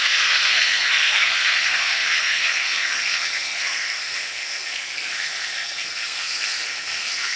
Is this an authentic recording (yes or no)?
no